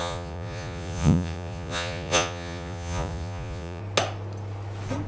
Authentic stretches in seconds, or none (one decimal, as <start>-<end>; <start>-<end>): 3.8-5.1